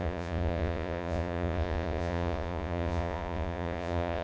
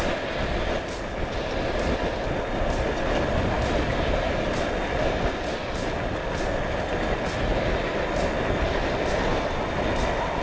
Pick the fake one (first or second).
first